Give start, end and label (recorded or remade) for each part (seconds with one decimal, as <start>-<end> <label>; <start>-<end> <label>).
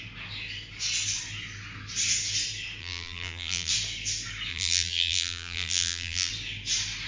0.0-2.8 recorded; 2.8-3.7 remade; 3.7-4.5 recorded; 4.5-6.3 remade; 6.3-7.1 recorded